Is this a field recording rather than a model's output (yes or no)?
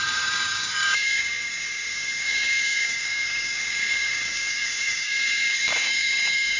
no